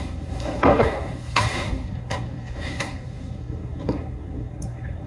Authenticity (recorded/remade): remade